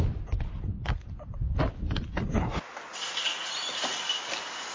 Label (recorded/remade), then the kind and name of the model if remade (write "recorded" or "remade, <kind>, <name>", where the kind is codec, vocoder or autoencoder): recorded